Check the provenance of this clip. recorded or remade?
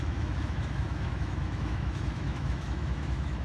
remade